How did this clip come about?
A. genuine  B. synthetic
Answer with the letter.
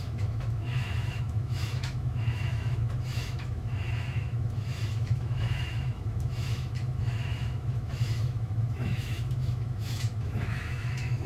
B